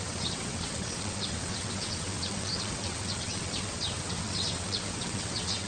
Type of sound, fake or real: fake